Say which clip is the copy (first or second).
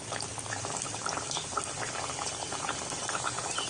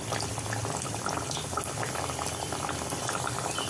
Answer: first